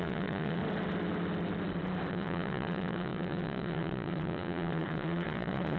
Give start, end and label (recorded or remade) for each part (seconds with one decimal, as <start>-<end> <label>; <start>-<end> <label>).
0.0-0.6 remade; 0.6-2.1 recorded; 2.1-5.8 remade